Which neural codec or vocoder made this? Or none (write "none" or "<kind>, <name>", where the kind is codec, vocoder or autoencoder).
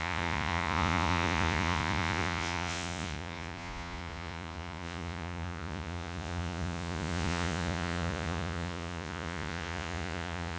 vocoder, Vocos